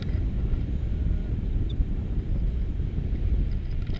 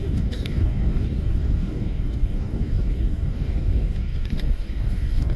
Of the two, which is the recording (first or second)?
first